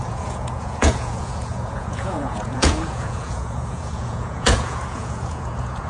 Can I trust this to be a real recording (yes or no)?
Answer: no